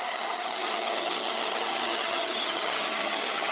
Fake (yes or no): yes